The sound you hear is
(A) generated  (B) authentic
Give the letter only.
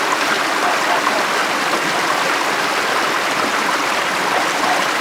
B